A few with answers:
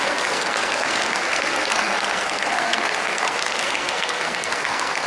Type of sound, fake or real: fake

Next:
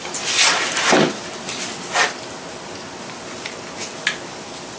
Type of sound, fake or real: real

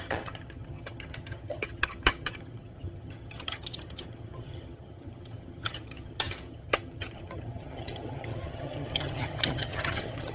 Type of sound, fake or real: fake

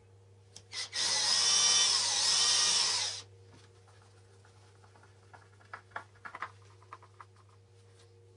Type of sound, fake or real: real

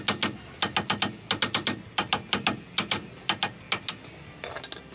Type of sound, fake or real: real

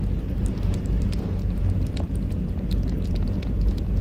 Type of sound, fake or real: fake